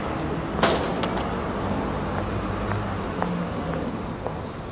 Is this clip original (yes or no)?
yes